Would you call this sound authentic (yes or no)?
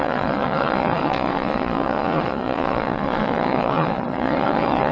no